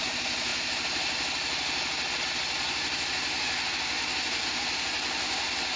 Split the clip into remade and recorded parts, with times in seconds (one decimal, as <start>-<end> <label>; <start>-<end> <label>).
0.0-5.8 recorded